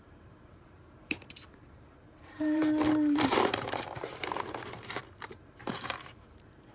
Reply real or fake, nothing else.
fake